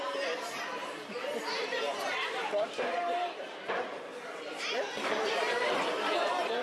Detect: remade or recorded remade